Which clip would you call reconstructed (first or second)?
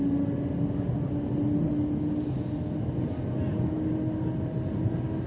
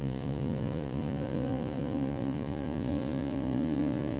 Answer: second